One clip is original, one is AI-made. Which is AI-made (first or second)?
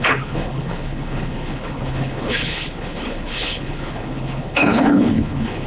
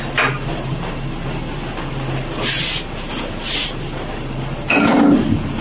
first